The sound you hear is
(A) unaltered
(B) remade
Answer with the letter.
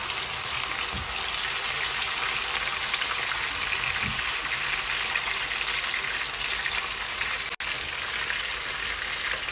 A